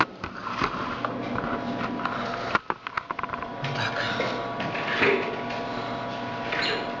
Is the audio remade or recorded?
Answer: recorded